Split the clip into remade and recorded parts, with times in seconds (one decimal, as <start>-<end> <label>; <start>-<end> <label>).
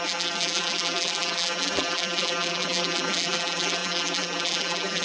0.0-5.0 remade